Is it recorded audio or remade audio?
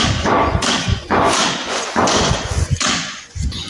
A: remade